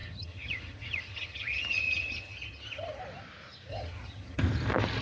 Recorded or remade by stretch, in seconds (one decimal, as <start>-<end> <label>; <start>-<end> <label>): 0.0-3.0 remade; 3.0-3.7 recorded; 3.7-4.4 remade; 4.4-5.0 recorded